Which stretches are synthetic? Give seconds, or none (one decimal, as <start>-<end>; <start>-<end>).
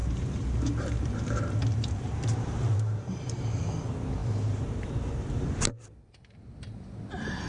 0.0-3.6; 4.2-4.9